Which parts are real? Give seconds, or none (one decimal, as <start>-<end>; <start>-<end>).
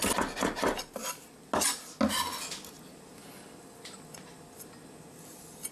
0.0-5.7